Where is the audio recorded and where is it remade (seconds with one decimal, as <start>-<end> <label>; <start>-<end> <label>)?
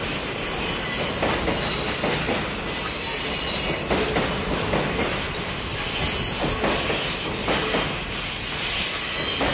0.0-9.5 recorded